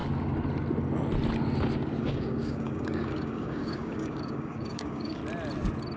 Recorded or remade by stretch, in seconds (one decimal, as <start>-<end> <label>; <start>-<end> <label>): 0.0-2.0 recorded; 2.0-5.2 remade; 5.2-6.0 recorded